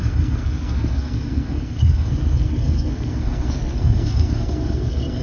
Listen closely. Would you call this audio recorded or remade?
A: remade